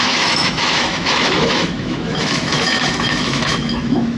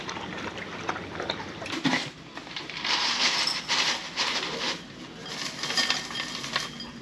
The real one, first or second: second